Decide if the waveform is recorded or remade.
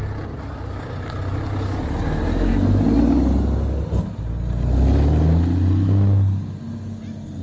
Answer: recorded